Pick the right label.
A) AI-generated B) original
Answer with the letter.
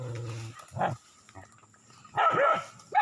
B